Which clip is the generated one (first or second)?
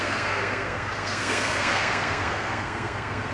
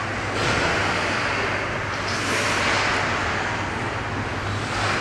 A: first